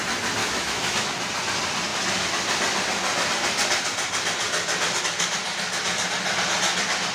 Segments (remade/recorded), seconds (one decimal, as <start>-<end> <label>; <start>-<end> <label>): 0.0-0.4 recorded; 0.4-1.1 remade; 1.1-7.1 recorded